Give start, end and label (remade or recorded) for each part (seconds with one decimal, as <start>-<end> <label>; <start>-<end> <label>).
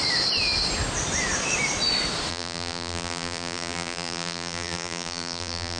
0.0-2.3 recorded; 2.3-5.8 remade